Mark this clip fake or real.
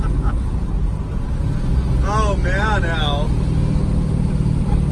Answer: real